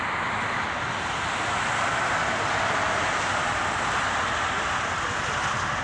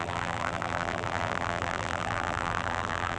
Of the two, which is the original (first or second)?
first